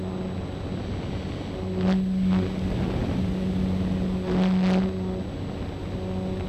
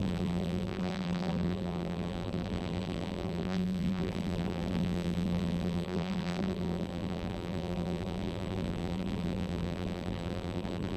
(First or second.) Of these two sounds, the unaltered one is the first